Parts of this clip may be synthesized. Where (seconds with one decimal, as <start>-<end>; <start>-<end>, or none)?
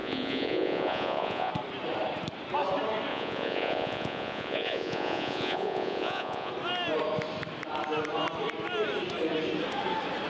0.0-1.5; 3.1-6.5